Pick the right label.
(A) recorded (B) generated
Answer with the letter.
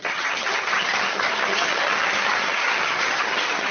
B